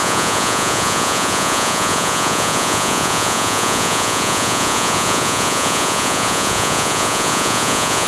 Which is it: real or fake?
fake